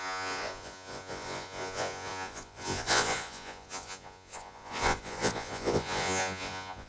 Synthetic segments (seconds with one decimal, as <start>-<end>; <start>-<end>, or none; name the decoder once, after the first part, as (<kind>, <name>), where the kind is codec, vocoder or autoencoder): 0.0-6.9 (vocoder, Vocos)